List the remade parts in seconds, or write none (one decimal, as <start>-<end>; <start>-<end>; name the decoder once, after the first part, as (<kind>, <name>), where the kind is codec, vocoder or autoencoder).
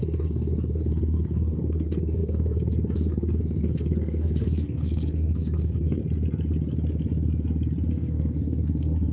0.0-6.0 (codec, SNAC); 7.9-9.1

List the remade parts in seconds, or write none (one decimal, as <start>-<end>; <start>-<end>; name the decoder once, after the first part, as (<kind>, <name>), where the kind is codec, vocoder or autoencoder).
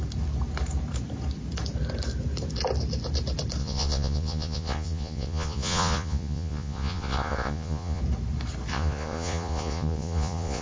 3.6-8.0 (vocoder, Vocos); 8.7-10.6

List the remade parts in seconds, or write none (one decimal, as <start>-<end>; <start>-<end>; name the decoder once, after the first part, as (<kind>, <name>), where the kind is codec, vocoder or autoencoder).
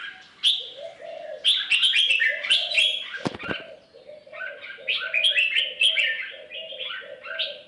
none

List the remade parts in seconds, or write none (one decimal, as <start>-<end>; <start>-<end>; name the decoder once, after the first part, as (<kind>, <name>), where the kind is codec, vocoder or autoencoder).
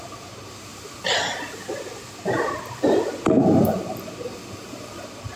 none